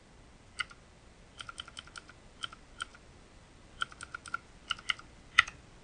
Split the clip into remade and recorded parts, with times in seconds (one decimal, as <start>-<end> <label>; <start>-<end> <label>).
0.0-5.8 recorded